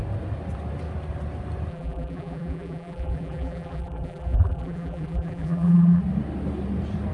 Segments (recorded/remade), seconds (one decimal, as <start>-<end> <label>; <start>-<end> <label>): 0.0-1.7 recorded; 1.7-6.0 remade; 6.0-7.1 recorded